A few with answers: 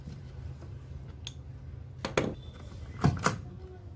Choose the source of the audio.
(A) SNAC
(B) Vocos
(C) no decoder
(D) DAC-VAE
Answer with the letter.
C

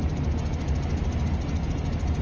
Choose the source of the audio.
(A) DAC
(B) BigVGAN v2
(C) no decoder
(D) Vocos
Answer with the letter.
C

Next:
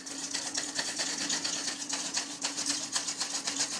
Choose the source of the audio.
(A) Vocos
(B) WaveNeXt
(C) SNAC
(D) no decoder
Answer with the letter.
A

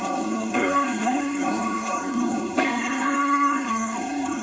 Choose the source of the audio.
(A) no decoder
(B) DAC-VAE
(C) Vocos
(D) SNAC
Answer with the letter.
D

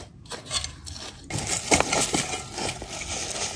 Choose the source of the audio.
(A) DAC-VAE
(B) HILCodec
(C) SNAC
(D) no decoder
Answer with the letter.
D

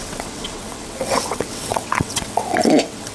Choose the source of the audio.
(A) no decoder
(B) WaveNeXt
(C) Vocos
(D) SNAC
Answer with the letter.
B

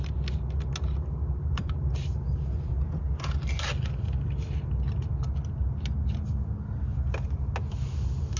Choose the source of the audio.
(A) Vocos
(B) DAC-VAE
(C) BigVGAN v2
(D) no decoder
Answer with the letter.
D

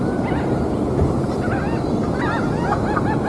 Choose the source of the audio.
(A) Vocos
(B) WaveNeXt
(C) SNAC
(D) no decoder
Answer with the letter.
D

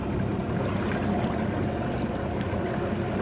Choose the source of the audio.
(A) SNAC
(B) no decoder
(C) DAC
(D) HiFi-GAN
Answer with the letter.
B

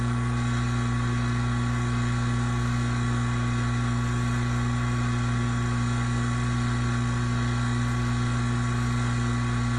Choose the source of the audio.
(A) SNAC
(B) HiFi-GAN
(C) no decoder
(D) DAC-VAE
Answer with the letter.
C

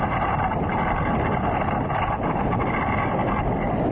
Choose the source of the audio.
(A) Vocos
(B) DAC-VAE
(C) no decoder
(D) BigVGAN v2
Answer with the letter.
C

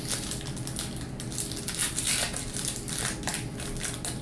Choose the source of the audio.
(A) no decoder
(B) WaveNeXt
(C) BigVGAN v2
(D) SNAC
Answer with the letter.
A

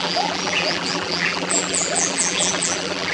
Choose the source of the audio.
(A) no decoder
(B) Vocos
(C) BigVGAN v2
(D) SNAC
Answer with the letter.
C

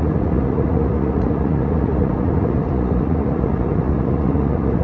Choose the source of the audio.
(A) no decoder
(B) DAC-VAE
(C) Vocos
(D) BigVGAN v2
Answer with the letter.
C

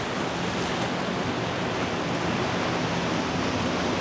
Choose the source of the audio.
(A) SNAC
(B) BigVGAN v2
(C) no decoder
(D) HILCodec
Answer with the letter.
C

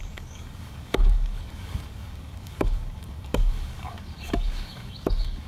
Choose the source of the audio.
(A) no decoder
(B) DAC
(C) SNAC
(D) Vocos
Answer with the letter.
B